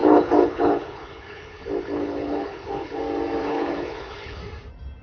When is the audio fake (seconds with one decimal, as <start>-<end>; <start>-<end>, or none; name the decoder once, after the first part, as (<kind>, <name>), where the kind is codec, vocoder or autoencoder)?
0.0-3.0 (codec, HILCodec); 3.4-4.4